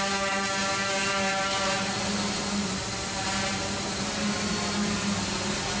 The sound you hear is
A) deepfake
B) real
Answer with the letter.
B